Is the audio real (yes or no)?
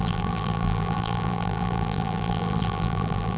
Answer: no